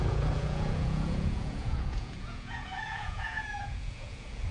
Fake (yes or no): yes